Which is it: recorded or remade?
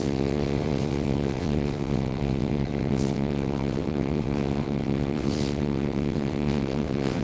remade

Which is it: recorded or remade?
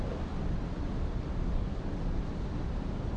recorded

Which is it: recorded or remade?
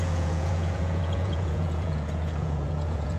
remade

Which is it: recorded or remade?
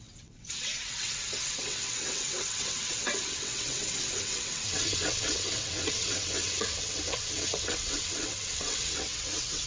remade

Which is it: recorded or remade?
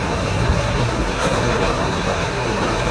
remade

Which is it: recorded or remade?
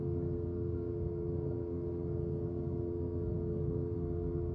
remade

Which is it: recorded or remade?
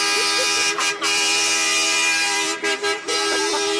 remade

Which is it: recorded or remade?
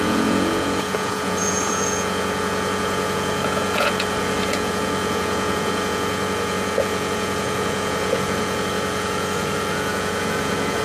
remade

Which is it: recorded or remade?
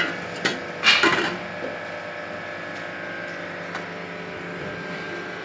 recorded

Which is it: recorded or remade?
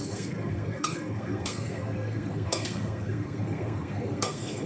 remade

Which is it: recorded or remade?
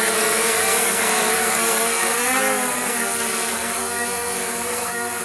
remade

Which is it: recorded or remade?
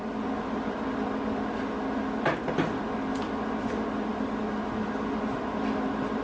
recorded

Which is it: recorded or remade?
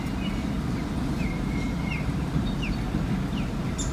recorded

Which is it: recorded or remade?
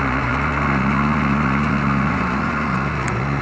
remade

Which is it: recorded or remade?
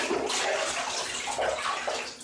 recorded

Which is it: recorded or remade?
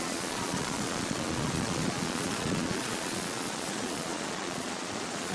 remade